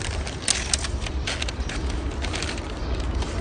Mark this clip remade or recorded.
recorded